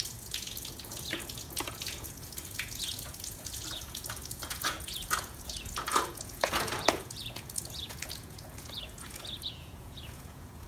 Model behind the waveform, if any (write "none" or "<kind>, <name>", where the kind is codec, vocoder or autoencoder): vocoder, Vocos